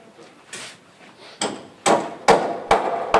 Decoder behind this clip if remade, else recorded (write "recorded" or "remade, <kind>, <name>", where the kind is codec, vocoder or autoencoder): recorded